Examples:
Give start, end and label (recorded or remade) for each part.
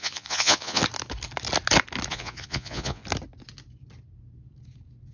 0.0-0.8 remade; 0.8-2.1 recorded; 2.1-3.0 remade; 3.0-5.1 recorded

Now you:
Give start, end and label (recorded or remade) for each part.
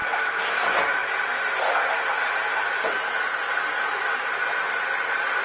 0.0-5.4 recorded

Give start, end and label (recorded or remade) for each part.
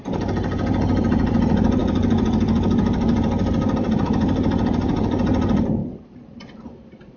0.0-7.2 remade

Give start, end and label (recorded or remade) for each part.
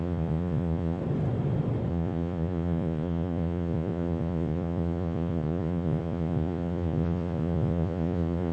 0.0-1.0 remade; 1.0-1.9 recorded; 1.9-8.5 remade